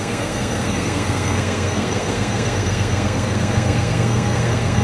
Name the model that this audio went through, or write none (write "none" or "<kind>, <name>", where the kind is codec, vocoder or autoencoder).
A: codec, SNAC